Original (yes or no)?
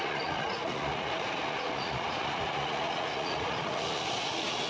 no